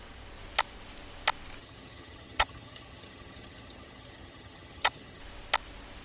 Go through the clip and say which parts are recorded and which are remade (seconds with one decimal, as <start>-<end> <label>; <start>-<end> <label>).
0.0-1.6 recorded; 1.6-5.2 remade; 5.2-6.0 recorded